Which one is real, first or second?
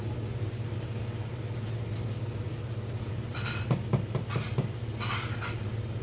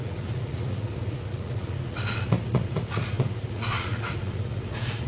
first